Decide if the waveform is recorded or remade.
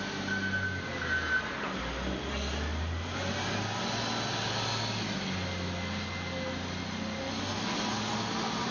recorded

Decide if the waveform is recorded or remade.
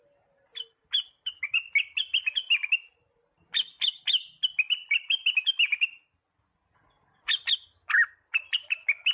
recorded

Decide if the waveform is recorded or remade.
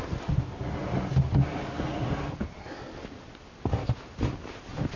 recorded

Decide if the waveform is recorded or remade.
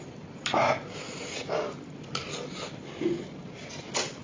recorded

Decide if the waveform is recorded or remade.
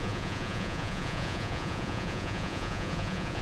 remade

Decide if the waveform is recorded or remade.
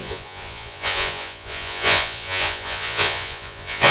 remade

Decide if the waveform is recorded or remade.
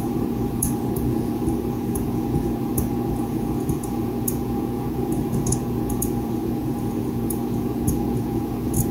remade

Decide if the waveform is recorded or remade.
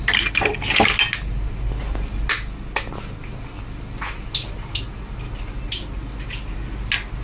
recorded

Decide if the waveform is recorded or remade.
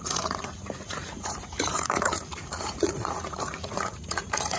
remade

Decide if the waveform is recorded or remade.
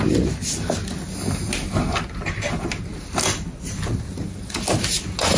recorded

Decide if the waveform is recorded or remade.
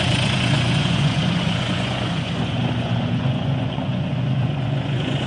remade